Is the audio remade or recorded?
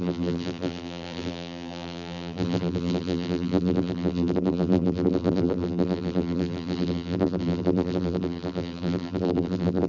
remade